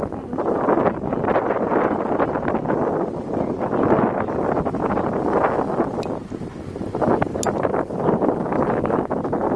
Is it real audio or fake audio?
real